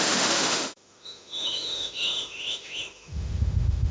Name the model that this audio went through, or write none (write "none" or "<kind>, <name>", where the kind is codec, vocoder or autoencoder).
autoencoder, DAC-VAE